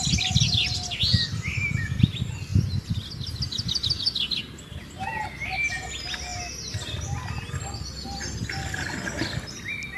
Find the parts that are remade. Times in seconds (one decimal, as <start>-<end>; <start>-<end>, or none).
none